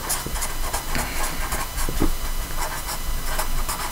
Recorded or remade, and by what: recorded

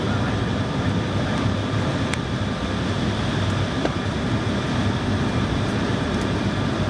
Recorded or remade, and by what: remade, vocoder, BigVGAN v2